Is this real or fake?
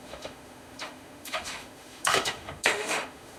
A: fake